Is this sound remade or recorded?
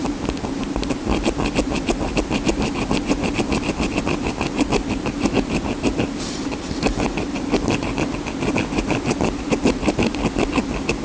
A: recorded